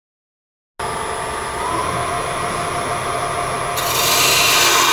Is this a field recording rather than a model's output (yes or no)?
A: yes